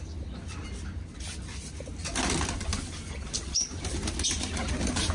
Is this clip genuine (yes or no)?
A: yes